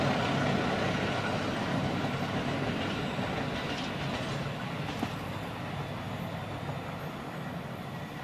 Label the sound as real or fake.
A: real